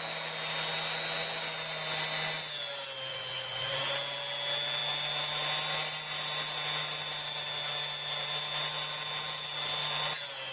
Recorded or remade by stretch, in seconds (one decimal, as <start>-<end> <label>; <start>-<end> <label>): 0.0-3.1 recorded; 3.1-3.8 remade; 3.8-10.5 recorded